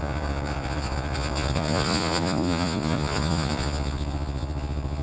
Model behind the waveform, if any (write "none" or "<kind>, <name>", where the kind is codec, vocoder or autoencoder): vocoder, Vocos